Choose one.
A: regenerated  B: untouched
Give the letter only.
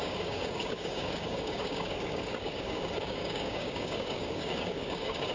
A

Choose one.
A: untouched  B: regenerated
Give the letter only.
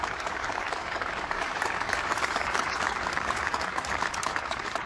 B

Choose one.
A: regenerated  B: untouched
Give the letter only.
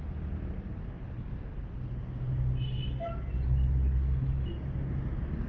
B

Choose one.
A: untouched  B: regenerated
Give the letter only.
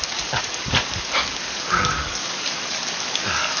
B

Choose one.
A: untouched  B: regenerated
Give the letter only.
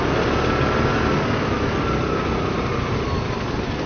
A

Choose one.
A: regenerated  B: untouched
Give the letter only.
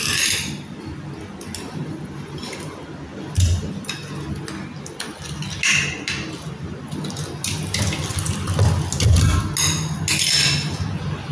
B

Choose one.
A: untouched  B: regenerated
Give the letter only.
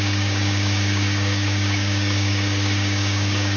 B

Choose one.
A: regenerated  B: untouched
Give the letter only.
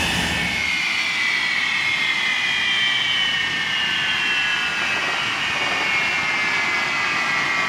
B